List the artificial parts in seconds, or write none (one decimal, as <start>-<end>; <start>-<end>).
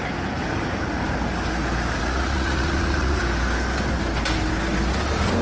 2.0-3.2